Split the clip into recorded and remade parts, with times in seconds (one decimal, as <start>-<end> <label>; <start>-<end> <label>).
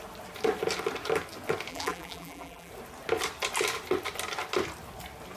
0.0-1.7 recorded; 1.7-2.7 remade; 2.7-5.4 recorded